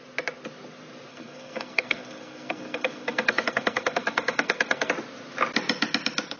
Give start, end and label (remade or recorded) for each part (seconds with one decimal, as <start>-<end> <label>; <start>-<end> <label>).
0.0-1.1 recorded; 1.1-4.9 remade; 4.9-6.4 recorded